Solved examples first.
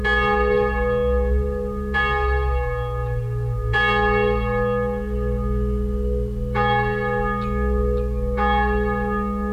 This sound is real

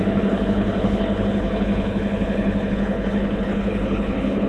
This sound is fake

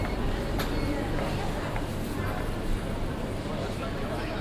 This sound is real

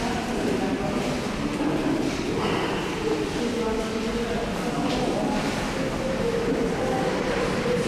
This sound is real